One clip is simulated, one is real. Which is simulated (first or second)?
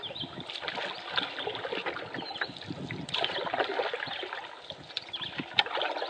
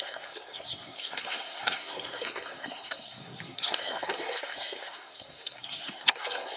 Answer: second